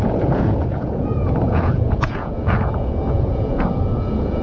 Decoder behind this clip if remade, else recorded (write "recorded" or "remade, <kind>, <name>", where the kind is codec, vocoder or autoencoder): remade, vocoder, Vocos